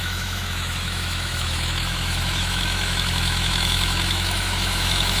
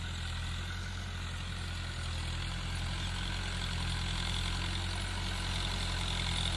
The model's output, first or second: first